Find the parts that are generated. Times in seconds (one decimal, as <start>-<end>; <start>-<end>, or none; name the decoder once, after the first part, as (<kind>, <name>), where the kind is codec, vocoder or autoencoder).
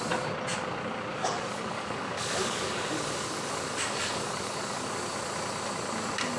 1.1-4.9 (codec, DAC)